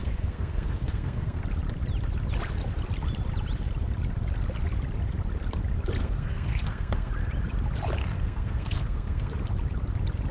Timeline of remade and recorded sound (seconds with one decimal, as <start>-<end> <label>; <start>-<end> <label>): 0.0-1.4 remade; 1.4-6.0 recorded; 6.0-7.1 remade; 7.1-8.0 recorded; 8.0-9.3 remade; 9.3-10.3 recorded